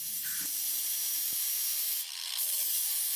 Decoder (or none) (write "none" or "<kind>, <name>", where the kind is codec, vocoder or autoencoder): none